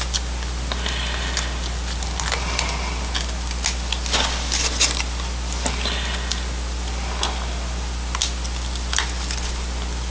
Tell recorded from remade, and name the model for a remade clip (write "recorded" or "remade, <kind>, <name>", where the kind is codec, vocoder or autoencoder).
recorded